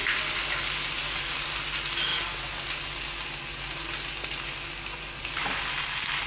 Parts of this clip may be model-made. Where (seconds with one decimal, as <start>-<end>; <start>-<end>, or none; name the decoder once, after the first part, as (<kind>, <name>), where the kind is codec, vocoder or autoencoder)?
none